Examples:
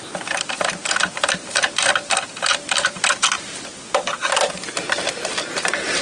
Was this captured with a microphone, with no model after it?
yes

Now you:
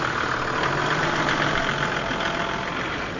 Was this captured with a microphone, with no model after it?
yes